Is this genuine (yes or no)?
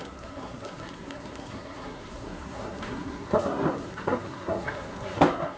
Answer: no